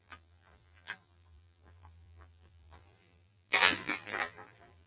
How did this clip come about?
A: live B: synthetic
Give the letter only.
B